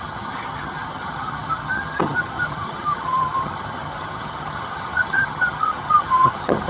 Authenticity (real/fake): fake